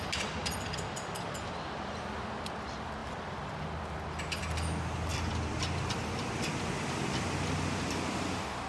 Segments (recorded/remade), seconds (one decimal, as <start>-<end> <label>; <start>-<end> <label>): 0.0-0.4 recorded; 0.4-1.7 remade; 1.7-3.0 recorded; 3.0-3.6 remade; 3.6-5.1 recorded; 5.1-8.7 remade